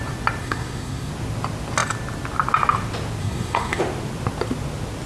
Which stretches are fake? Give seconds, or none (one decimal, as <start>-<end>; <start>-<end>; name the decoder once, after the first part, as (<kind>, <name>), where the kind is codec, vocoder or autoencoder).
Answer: 0.4-1.1 (codec, SNAC); 3.2-3.8